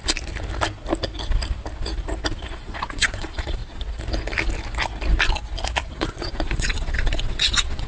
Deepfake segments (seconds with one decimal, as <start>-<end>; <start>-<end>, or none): 2.6-3.6; 5.9-7.9

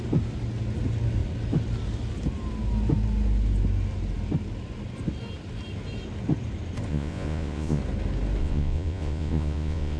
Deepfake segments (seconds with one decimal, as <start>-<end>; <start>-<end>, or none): 6.9-7.8; 8.4-10.0

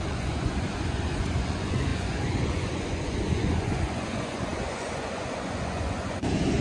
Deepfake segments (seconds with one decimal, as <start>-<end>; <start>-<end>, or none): 0.0-6.6

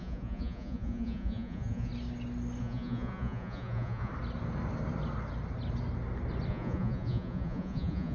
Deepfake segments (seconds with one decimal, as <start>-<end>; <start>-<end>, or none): 0.0-1.9; 2.6-4.1; 6.5-8.1

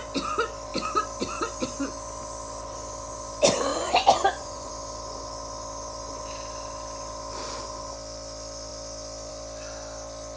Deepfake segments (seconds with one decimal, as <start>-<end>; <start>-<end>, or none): 3.7-4.7